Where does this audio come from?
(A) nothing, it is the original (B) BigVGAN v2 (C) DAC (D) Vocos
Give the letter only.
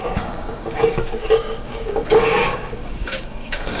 C